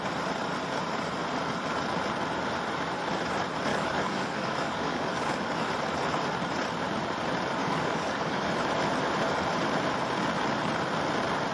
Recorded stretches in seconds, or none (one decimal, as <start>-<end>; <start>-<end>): 0.0-3.7; 5.7-7.6; 8.5-11.5